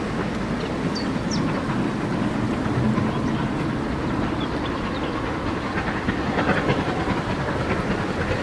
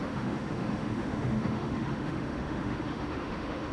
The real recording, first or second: first